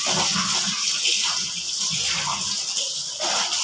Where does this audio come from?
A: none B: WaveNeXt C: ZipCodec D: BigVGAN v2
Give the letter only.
A